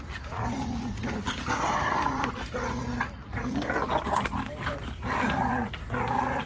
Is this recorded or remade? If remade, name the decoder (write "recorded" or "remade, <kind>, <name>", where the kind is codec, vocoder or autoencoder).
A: remade, vocoder, BigVGAN v2